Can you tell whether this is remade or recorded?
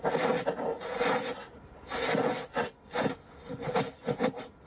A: recorded